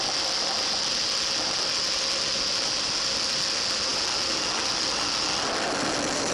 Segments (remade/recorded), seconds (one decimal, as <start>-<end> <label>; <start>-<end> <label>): 0.0-6.3 recorded